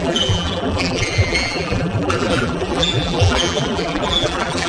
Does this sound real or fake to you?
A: fake